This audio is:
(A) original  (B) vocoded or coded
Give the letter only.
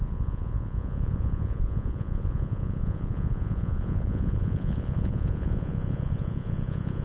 B